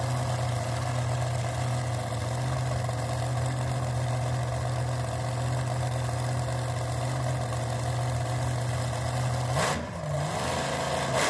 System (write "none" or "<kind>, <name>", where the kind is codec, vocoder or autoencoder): none